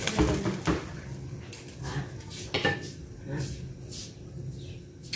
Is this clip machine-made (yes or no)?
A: no